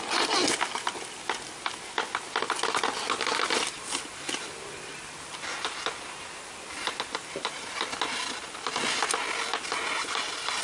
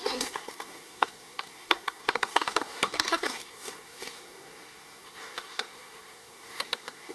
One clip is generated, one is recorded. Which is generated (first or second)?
second